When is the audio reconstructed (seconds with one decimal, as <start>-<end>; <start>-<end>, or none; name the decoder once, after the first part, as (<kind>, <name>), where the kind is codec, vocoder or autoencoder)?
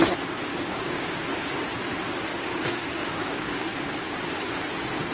0.5-1.2 (codec, DAC); 2.3-4.4